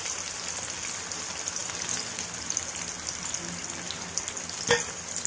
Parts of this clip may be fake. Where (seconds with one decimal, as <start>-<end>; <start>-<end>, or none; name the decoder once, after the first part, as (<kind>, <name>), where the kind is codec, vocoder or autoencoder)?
none